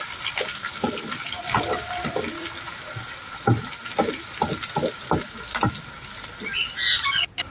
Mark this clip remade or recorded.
recorded